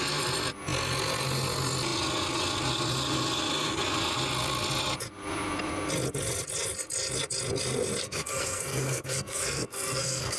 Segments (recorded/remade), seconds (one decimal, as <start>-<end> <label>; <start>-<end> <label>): 0.0-8.0 recorded; 8.0-10.4 remade